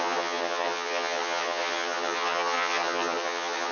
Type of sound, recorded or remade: remade